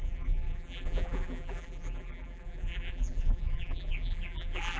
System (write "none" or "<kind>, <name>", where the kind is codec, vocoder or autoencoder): vocoder, BigVGAN v2